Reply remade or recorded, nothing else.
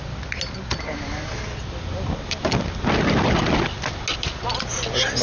recorded